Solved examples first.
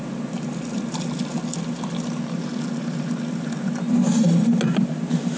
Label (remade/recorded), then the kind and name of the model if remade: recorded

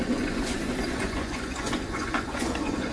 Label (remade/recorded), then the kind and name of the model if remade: remade, vocoder, Vocos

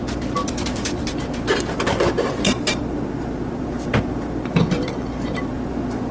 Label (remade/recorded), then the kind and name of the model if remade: remade, vocoder, BigVGAN v2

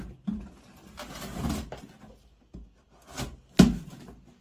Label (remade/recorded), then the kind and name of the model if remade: recorded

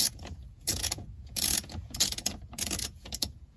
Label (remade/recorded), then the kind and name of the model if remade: remade, vocoder, Vocos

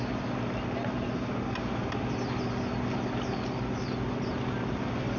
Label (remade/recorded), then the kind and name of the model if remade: recorded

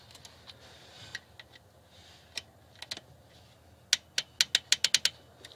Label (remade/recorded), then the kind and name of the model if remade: recorded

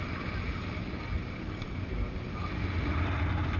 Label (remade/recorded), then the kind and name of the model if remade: recorded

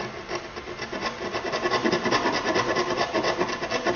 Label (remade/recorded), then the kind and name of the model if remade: recorded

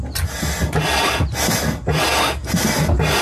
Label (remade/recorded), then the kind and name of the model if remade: recorded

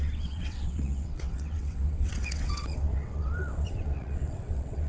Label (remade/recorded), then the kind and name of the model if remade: remade, vocoder, WaveNeXt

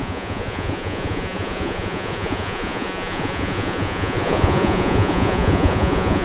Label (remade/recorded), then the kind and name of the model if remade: remade, vocoder, Vocos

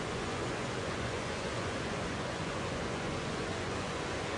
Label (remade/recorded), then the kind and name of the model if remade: remade, vocoder, Vocos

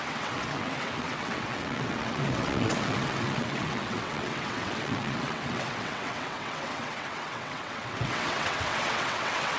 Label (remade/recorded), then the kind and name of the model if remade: remade, vocoder, WaveNeXt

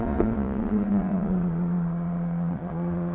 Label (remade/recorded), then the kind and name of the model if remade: remade, vocoder, Vocos